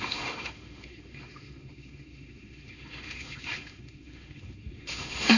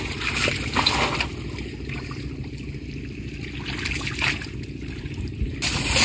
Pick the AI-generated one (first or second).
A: first